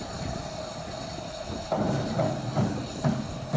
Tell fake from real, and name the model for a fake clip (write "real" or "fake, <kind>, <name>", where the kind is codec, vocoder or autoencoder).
real